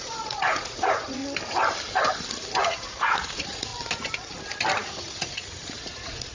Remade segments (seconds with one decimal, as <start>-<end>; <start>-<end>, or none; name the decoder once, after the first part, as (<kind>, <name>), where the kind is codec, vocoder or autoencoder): 0.0-1.2 (vocoder, Vocos); 2.6-3.7; 4.8-6.3